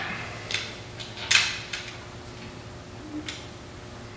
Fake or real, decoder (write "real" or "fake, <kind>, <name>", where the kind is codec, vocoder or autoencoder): real